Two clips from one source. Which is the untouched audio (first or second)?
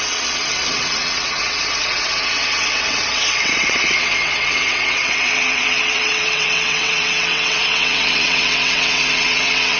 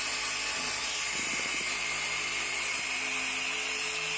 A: second